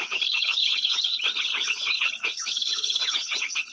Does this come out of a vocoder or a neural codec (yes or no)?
yes